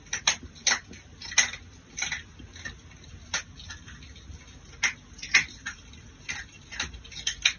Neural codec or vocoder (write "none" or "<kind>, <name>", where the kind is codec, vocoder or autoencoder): none